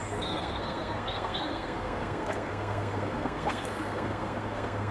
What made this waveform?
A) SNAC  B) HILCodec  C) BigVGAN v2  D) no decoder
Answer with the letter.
A